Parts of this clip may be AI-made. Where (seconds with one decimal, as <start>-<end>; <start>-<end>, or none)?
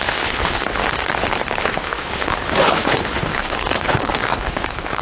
0.0-0.8; 1.6-5.0